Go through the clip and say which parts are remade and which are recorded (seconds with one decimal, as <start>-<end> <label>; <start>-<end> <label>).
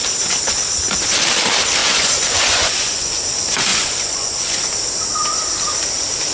0.0-1.8 recorded; 1.8-3.2 remade; 3.2-3.7 recorded; 3.7-4.7 remade; 4.7-6.3 recorded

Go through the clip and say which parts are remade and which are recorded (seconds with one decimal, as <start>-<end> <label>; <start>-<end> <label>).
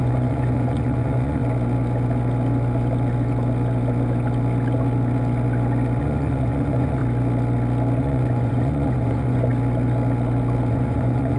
0.0-1.4 remade; 1.4-6.0 recorded; 6.0-7.0 remade; 7.0-8.0 recorded; 8.0-9.5 remade; 9.5-10.7 recorded; 10.7-11.4 remade